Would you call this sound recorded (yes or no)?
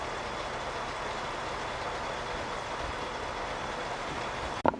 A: yes